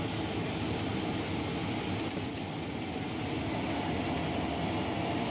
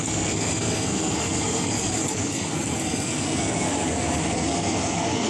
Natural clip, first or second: first